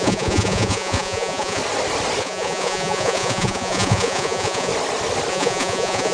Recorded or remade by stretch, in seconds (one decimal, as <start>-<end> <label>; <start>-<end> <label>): 0.0-1.6 remade; 1.6-2.2 recorded; 2.2-4.7 remade; 4.7-5.3 recorded; 5.3-6.1 remade